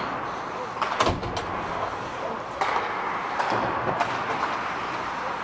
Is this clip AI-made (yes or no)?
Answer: no